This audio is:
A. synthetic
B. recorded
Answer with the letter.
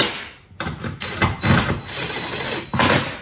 B